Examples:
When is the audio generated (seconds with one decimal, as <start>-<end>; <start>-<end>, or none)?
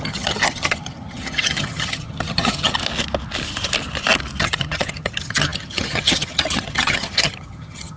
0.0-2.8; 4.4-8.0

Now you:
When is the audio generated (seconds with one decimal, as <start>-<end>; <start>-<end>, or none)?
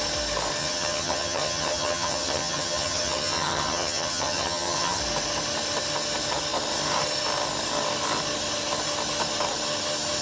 0.6-5.0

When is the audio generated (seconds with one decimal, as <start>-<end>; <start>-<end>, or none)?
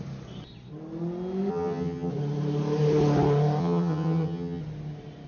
1.5-2.1; 3.6-4.6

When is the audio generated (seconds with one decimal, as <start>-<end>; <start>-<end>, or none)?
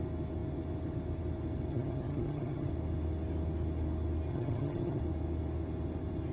1.7-2.7; 4.3-5.0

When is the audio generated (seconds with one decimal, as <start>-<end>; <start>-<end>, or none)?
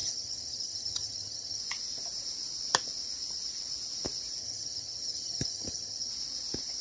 0.0-1.6; 4.4-6.1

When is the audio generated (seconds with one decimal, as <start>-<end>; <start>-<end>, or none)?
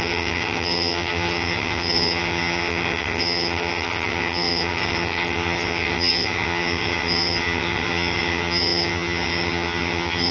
0.0-10.3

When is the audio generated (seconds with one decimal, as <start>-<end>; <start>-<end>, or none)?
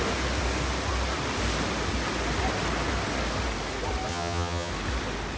4.1-4.7